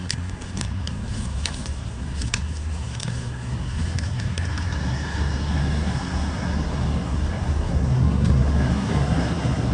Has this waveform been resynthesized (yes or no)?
yes